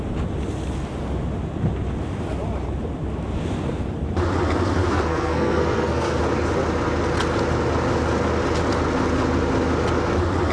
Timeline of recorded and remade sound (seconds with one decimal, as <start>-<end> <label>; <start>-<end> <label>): 0.0-4.8 recorded; 4.8-6.2 remade; 6.2-10.5 recorded